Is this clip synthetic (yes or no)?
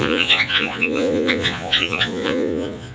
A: yes